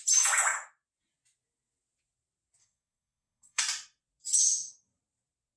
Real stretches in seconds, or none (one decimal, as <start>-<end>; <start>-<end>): 0.0-2.6; 3.6-5.6